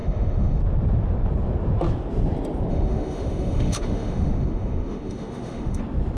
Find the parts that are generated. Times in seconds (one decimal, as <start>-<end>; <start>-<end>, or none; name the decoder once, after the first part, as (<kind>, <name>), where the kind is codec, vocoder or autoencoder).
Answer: 0.0-0.6 (autoencoder, DAC-VAE); 2.7-5.8